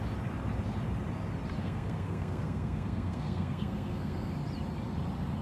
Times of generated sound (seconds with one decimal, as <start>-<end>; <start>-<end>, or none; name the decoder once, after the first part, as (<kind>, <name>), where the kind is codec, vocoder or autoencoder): 1.6-4.3 (codec, SNAC)

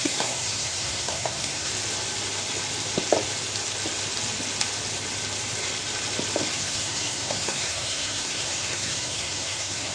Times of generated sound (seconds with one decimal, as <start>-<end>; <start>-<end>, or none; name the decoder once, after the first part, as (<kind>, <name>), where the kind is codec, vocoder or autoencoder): 0.0-1.7 (codec, SNAC); 6.5-9.9

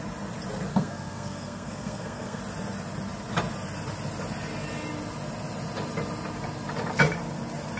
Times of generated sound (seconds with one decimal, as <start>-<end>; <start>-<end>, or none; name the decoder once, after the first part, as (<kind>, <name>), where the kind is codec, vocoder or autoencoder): 0.7-2.4 (codec, SNAC)

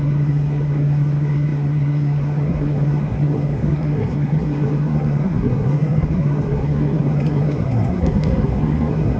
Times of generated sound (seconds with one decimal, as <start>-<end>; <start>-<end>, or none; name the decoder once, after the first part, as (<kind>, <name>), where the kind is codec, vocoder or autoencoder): 0.0-9.2 (codec, SNAC)

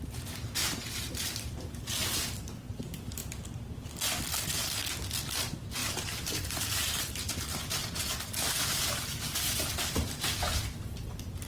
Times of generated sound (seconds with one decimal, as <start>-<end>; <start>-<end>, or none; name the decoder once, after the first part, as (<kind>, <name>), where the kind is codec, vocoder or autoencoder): 0.0-3.2 (vocoder, BigVGAN v2); 5.3-11.5

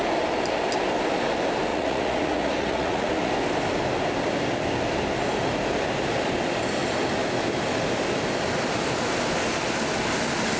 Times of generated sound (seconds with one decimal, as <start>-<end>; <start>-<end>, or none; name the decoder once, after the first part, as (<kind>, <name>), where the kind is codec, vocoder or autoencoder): 1.7-3.3 (vocoder, Vocos)

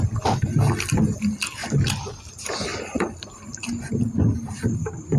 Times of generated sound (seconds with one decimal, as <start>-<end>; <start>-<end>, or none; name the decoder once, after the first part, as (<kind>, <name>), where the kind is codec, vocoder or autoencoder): 1.6-2.2 (vocoder, BigVGAN v2); 2.7-4.6

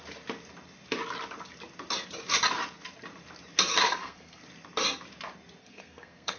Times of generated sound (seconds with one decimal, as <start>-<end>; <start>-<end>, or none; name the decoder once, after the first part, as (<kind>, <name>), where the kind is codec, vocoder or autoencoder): 3.8-4.4 (codec, SNAC); 5.6-6.4